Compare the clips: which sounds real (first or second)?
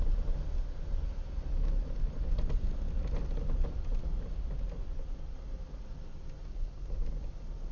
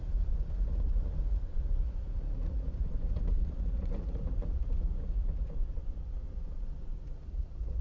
first